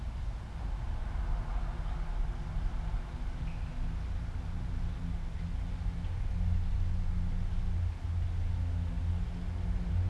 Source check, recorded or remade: recorded